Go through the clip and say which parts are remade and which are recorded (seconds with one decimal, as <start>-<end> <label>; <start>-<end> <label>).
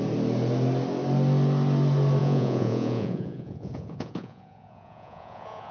0.0-2.2 recorded; 2.2-5.7 remade